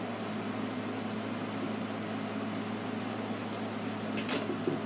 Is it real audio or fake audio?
real